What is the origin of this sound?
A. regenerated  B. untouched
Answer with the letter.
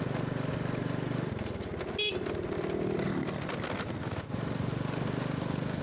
B